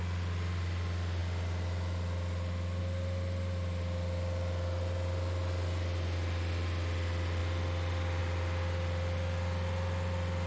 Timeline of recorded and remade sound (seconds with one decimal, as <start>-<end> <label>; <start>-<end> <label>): 0.0-10.5 recorded